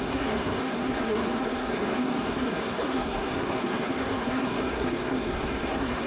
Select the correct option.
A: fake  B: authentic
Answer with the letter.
A